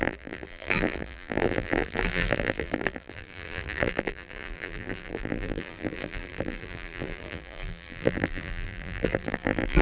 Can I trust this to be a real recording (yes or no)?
no